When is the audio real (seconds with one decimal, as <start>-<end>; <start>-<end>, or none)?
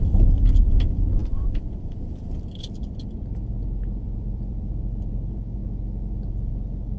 5.6-6.3